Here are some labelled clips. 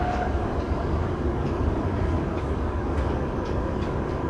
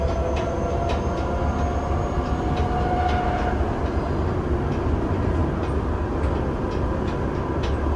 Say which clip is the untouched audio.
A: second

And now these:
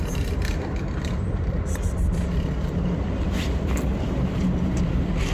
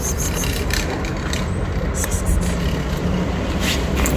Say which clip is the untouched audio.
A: second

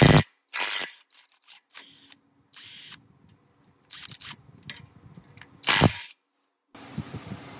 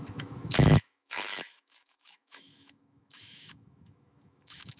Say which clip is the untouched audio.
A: first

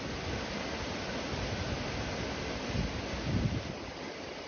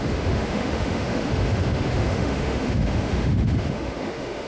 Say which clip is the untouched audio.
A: first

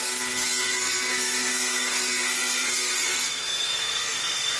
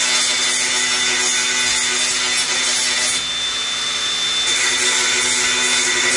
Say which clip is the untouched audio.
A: second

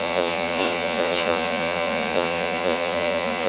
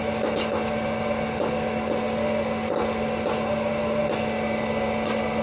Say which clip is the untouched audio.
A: second